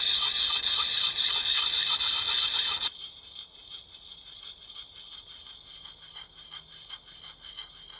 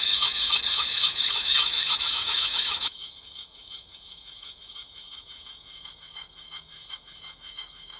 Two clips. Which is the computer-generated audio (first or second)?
second